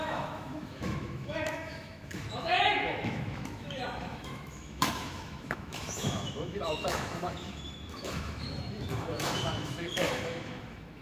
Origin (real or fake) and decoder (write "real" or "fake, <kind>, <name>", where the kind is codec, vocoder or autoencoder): fake, autoencoder, DAC-VAE